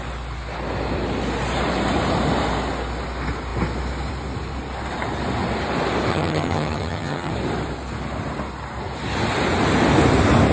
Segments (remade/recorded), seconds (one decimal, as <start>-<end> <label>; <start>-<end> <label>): 0.0-6.1 recorded; 6.1-7.3 remade; 7.3-10.5 recorded